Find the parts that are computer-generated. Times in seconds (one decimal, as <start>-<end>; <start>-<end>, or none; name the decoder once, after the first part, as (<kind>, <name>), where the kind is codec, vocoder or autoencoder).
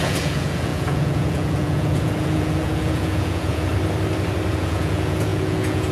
0.0-3.7 (vocoder, Vocos); 4.5-5.9